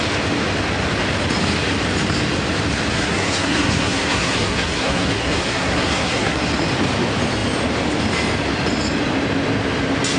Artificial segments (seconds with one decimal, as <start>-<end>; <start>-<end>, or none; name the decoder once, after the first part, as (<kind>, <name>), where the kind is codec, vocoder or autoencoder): 2.9-6.5 (codec, SNAC)